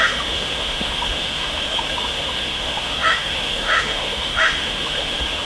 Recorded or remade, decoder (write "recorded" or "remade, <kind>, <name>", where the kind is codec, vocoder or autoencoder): remade, autoencoder, DAC-VAE